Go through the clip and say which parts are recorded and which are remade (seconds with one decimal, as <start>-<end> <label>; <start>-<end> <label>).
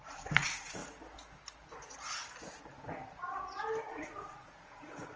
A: 0.0-0.8 remade; 0.8-3.9 recorded; 3.9-5.2 remade